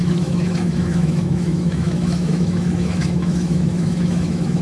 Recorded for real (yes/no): no